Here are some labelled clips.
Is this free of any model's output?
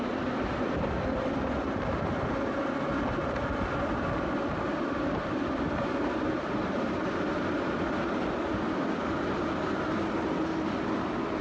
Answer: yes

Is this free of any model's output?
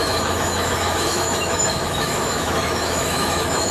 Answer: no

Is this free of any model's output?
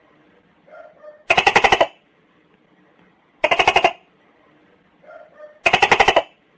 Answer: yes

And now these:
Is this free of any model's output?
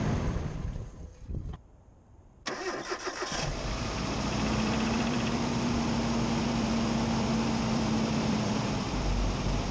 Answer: no